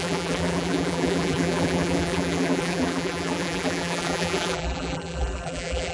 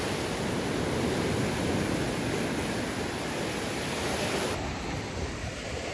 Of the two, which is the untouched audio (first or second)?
second